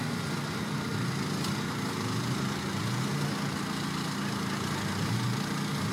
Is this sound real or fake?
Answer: real